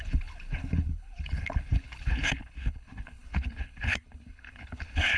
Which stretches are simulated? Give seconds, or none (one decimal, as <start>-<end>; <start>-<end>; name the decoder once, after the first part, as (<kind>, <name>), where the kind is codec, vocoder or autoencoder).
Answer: 0.0-5.2 (codec, HILCodec)